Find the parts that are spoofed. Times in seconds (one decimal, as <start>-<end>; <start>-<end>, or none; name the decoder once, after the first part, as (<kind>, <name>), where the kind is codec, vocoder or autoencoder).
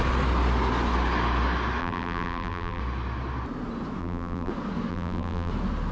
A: 1.8-2.8 (vocoder, BigVGAN v2); 4.0-4.5; 4.9-5.5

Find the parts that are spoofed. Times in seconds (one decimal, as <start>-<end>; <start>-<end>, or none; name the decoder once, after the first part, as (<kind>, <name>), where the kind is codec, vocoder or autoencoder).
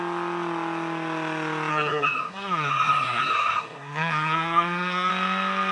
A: 1.7-5.1 (codec, SNAC)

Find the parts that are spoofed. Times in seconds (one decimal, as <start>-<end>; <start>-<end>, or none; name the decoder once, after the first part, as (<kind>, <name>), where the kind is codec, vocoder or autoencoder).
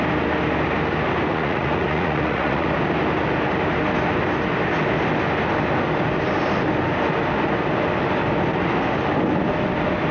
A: 1.3-2.7 (vocoder, Vocos)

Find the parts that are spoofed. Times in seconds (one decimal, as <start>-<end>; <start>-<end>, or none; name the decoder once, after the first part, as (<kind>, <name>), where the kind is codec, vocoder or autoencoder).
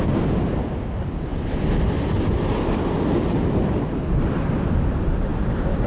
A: none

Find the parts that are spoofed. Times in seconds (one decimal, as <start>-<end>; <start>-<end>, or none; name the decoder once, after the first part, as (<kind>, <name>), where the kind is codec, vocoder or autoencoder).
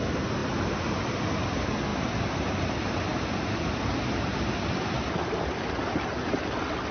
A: none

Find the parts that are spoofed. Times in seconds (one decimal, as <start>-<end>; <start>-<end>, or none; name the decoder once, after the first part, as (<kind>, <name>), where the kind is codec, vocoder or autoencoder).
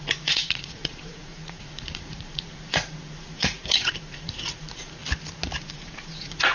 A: 0.0-5.0 (vocoder, Vocos); 5.6-6.5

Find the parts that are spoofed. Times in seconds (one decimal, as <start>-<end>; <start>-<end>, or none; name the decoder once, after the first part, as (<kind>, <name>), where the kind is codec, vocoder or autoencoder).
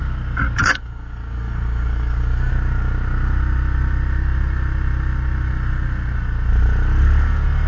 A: 0.6-2.5 (codec, DAC)